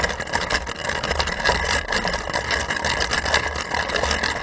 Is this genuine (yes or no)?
yes